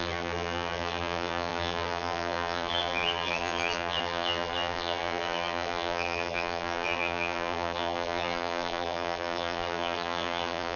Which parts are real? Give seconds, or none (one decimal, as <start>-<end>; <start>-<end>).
none